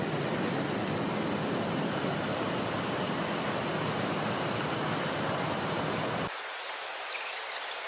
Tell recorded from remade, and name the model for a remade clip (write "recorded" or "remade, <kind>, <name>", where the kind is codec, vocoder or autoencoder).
recorded